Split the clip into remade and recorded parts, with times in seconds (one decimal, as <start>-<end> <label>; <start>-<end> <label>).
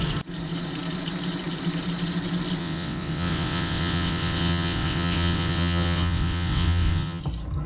0.0-2.6 recorded; 2.6-7.2 remade; 7.2-7.7 recorded